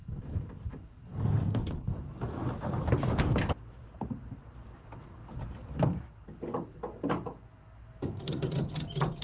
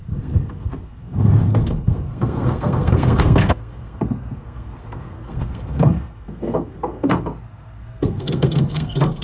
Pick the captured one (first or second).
first